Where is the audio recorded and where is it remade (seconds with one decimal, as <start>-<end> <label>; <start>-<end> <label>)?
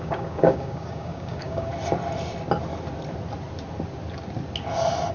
0.0-1.7 remade; 1.7-5.1 recorded